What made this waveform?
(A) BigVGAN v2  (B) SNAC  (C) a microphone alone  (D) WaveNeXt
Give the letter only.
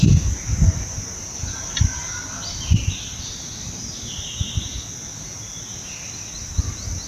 C